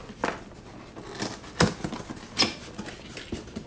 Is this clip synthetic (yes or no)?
no